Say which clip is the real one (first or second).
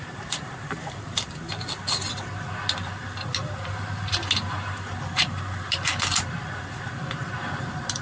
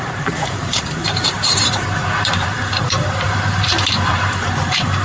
first